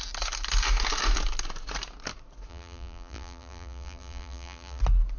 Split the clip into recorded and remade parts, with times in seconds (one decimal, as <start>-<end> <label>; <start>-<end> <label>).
0.0-2.5 recorded; 2.5-4.8 remade; 4.8-5.2 recorded